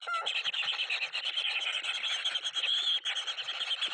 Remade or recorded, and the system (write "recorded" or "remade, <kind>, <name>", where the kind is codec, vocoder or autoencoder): recorded